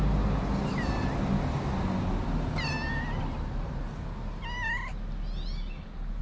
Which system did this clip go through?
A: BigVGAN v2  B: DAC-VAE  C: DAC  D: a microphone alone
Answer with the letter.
D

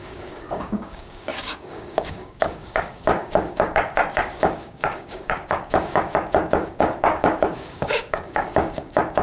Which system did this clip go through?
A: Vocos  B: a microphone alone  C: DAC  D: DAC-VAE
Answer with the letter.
C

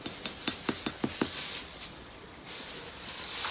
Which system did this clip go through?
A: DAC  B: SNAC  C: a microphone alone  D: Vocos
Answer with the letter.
C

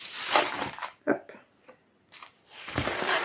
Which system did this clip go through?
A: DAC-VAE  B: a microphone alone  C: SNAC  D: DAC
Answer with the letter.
B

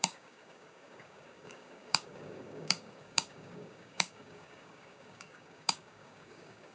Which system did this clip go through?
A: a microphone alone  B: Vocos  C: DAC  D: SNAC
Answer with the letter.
C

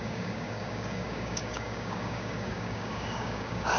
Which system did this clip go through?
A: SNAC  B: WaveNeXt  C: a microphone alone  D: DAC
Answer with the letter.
D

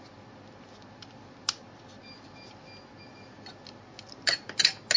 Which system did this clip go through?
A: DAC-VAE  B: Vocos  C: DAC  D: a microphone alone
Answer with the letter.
D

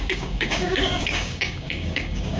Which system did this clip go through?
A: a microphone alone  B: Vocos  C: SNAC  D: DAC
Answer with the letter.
D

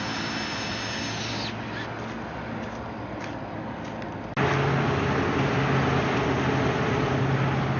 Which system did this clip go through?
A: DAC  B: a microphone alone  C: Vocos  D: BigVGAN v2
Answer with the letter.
B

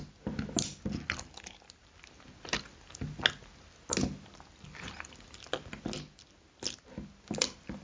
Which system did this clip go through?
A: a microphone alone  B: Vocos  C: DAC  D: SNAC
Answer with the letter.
A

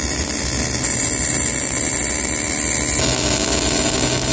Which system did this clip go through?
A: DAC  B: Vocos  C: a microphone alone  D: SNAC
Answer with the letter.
C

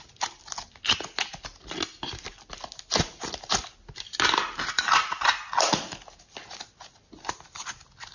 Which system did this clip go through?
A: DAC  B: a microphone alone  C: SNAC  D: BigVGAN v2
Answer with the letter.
B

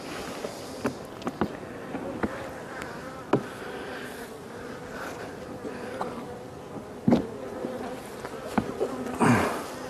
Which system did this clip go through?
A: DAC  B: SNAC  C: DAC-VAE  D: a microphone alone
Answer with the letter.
D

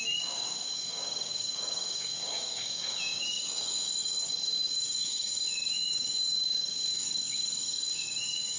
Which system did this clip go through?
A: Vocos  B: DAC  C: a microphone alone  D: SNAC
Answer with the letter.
B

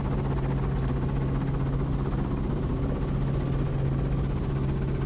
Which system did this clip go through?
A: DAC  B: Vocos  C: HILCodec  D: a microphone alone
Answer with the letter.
D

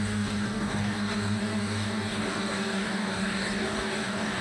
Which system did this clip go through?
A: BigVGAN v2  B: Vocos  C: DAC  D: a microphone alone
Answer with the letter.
C